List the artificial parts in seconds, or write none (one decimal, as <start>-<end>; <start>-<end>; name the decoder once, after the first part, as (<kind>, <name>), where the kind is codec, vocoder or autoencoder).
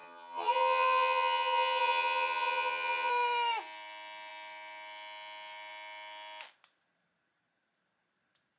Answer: 0.0-3.1 (vocoder, HiFi-GAN)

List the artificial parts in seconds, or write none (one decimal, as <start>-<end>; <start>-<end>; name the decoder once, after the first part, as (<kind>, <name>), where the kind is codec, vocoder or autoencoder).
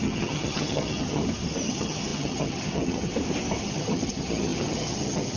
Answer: 0.0-1.2 (vocoder, HiFi-GAN); 1.7-3.1; 3.6-5.4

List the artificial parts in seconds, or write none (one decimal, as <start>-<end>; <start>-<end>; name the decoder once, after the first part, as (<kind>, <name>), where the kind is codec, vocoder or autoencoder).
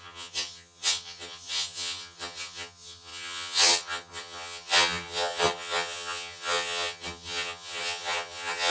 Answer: 0.0-8.7 (vocoder, HiFi-GAN)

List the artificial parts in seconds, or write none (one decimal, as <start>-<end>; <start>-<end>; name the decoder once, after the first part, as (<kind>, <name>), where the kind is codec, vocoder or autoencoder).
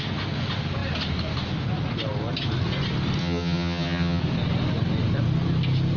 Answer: 3.2-4.2 (vocoder, HiFi-GAN)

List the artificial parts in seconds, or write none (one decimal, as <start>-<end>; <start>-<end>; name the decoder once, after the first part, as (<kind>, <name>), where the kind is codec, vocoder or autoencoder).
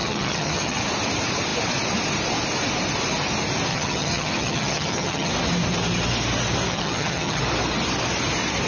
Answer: 0.0-0.8 (vocoder, HiFi-GAN); 3.7-5.3; 6.7-7.4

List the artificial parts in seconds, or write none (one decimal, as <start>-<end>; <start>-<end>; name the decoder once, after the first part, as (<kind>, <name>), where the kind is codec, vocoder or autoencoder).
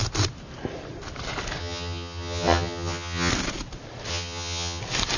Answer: 1.6-3.3 (vocoder, HiFi-GAN); 4.1-4.8